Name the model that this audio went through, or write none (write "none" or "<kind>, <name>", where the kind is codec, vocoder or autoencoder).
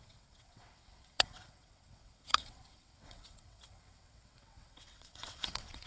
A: vocoder, WaveNeXt